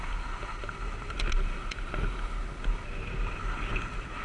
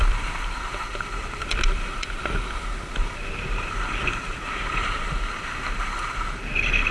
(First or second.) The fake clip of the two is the second